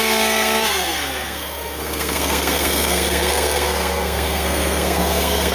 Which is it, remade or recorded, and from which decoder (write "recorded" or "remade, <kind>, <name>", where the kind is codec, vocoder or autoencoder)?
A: remade, codec, SNAC